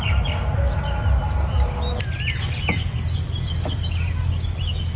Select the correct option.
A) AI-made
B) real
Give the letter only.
B